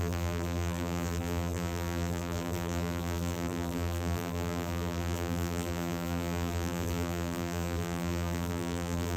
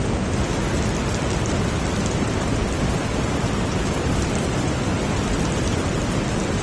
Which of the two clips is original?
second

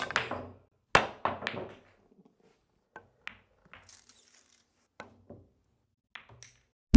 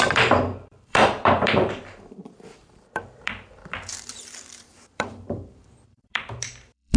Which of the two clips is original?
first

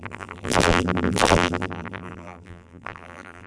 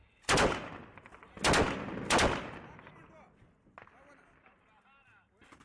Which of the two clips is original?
second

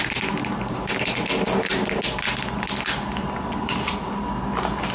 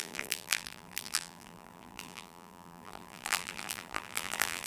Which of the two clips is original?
first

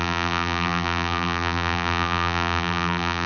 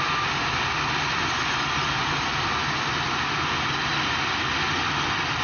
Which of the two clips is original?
second